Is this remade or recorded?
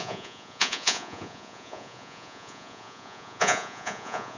remade